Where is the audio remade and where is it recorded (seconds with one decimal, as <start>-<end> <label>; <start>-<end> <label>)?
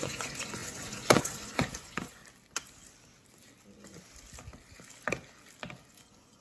0.0-2.2 remade; 2.2-5.9 recorded; 5.9-6.4 remade